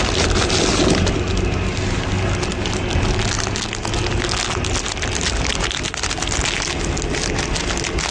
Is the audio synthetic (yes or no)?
no